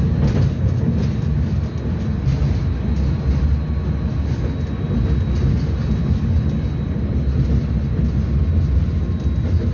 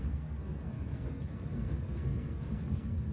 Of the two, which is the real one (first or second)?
first